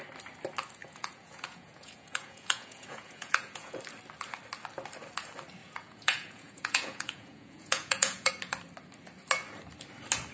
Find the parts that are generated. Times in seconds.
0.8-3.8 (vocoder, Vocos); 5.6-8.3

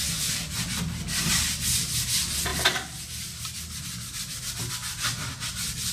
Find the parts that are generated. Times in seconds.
0.0-0.5 (vocoder, BigVGAN v2)